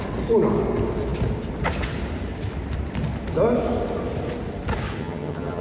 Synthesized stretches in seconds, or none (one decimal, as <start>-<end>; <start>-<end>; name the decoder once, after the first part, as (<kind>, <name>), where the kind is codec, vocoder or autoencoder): 5.0-5.6 (vocoder, HiFi-GAN)